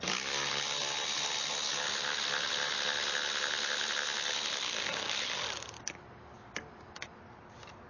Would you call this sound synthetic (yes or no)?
no